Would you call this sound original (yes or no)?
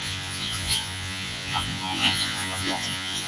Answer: no